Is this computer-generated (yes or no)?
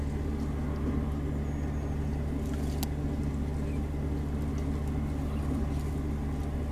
no